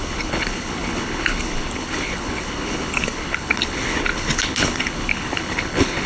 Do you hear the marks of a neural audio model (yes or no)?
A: yes